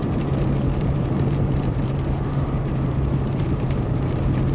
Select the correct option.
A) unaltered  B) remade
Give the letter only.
B